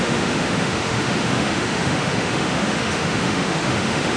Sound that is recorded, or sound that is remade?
remade